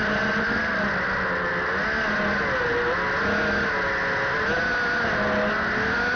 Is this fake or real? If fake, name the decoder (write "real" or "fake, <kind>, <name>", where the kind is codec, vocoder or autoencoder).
real